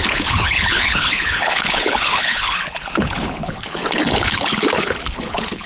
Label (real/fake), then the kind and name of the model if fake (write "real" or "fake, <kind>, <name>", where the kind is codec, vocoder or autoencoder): fake, codec, HILCodec